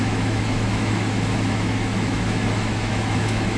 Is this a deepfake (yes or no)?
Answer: yes